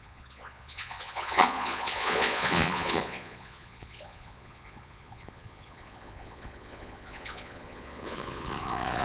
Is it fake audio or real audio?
fake